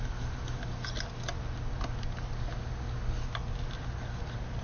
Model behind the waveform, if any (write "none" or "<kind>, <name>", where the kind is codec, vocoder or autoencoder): none